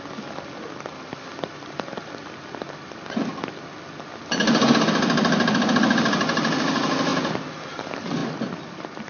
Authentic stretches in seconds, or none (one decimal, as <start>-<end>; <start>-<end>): 0.0-9.1